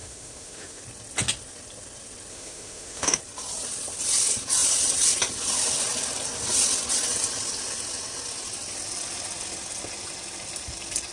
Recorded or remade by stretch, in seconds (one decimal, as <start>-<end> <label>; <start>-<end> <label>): 0.0-0.8 remade; 0.8-2.3 recorded; 2.3-3.2 remade; 3.2-11.1 recorded

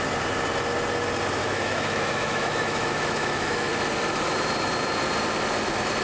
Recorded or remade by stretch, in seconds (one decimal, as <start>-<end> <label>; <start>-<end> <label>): 0.0-1.4 recorded; 1.4-3.7 remade; 3.7-6.0 recorded

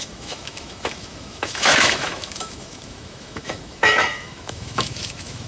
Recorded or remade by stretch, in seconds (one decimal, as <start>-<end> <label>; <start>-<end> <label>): 0.0-5.5 remade

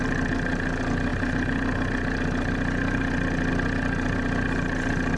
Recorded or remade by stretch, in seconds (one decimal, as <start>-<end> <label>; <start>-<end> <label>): 0.0-5.2 recorded

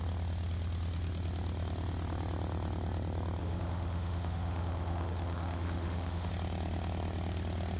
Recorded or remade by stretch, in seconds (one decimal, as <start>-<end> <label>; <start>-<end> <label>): 0.0-3.4 recorded; 3.4-6.3 remade; 6.3-7.8 recorded

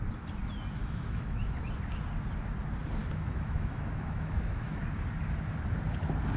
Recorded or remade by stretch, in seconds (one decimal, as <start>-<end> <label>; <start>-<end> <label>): 0.0-0.8 recorded; 0.8-1.5 remade; 1.5-3.0 recorded; 3.0-4.8 remade; 4.8-6.4 recorded

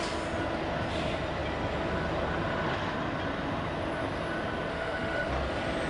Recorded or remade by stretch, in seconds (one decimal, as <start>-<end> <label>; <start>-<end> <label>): 0.0-4.7 recorded; 4.7-5.3 remade; 5.3-5.9 recorded